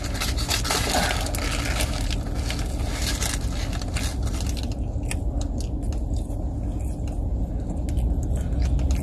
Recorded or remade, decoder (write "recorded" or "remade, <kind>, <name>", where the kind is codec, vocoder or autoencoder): recorded